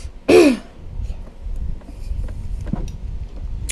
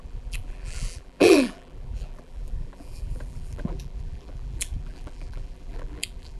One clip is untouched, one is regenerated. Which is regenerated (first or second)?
second